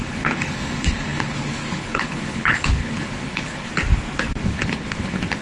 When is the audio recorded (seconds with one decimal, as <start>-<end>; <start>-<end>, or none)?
3.7-4.4